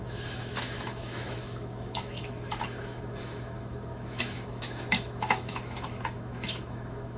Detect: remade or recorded remade